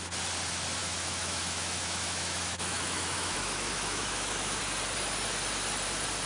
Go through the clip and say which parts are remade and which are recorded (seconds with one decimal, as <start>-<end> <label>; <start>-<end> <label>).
0.0-0.8 recorded; 0.8-4.6 remade; 4.6-6.3 recorded